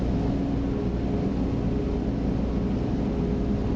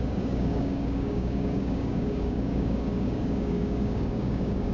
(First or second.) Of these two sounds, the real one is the first